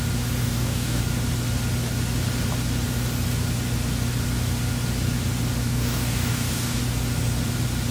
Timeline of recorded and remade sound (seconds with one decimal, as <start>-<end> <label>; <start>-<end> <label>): 0.0-0.4 recorded; 0.4-1.0 remade; 1.0-5.6 recorded; 5.6-6.8 remade; 6.8-7.9 recorded